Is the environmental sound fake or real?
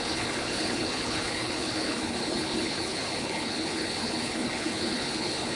fake